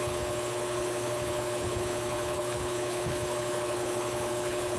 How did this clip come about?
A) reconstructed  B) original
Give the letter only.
A